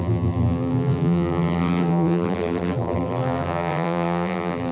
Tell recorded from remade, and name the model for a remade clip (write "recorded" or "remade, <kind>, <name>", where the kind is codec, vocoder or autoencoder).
remade, vocoder, BigVGAN v2